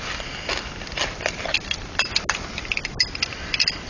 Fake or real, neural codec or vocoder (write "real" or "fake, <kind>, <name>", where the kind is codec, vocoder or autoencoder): real